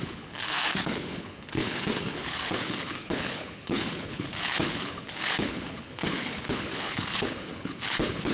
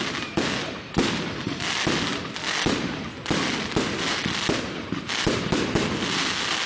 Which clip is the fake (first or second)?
first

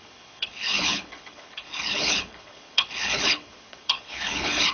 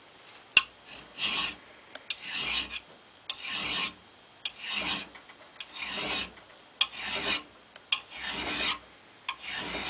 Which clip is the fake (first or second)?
first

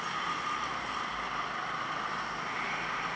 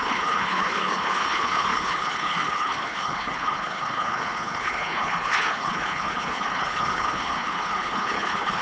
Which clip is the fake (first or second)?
second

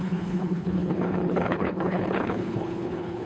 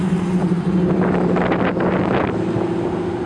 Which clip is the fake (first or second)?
first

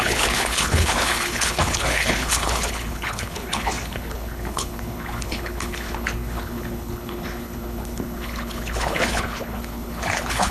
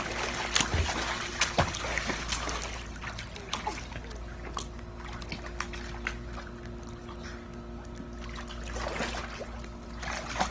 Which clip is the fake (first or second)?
first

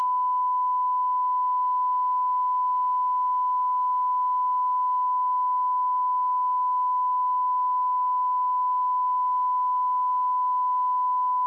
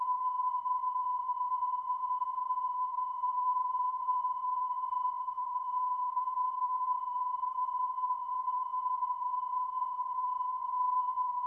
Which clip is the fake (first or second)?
second